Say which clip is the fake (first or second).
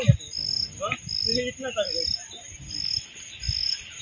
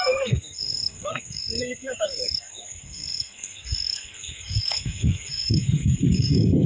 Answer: second